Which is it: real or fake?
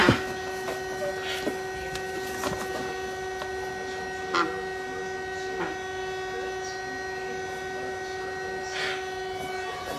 real